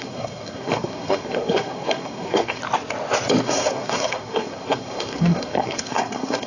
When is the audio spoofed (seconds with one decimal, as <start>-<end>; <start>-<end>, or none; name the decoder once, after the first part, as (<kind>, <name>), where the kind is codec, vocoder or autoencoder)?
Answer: 0.0-2.6 (codec, SNAC); 3.4-6.5